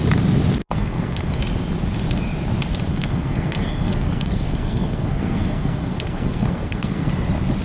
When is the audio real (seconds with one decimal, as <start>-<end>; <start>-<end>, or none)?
0.0-0.6; 1.4-2.9; 7.1-7.6